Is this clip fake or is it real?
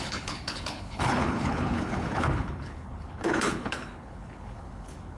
fake